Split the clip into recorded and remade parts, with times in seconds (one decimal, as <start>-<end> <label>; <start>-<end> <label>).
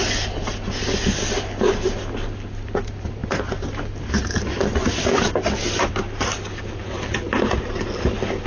0.0-8.5 recorded